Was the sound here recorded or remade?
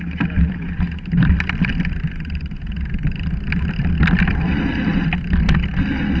recorded